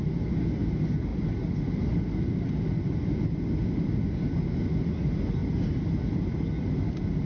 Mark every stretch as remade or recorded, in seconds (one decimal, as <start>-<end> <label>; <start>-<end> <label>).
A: 0.0-7.3 recorded

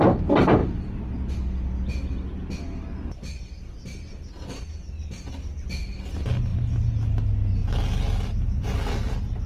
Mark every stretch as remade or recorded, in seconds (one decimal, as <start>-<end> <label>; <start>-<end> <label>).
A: 0.0-9.5 recorded

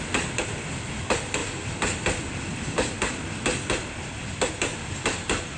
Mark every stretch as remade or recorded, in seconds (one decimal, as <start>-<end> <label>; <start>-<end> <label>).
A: 0.0-5.6 recorded

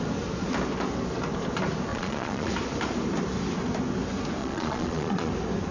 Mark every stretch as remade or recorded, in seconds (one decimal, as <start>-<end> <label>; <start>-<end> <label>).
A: 0.0-1.9 recorded; 1.9-2.5 remade; 2.5-4.4 recorded; 4.4-5.3 remade; 5.3-5.7 recorded

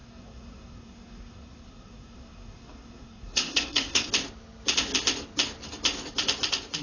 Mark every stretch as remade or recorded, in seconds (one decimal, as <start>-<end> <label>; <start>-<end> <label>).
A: 0.0-4.1 remade; 4.1-6.8 recorded

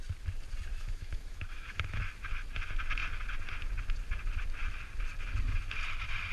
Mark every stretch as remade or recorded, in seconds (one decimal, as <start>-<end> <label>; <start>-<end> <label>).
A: 0.0-0.7 recorded; 0.7-2.0 remade; 2.0-6.3 recorded